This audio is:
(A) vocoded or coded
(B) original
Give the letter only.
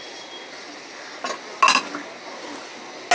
B